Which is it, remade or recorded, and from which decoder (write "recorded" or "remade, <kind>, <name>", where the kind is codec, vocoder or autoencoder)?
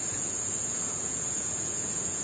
remade, vocoder, Vocos